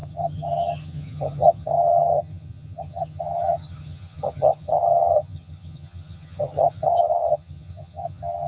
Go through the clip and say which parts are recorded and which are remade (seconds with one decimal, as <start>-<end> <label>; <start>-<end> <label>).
0.0-8.5 remade